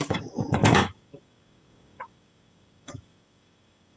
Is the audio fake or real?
fake